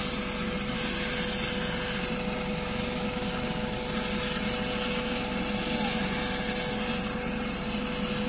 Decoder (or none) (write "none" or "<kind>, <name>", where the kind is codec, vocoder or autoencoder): none